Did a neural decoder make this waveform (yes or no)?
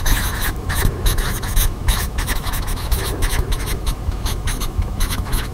yes